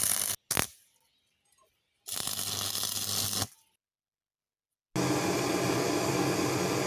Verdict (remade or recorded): recorded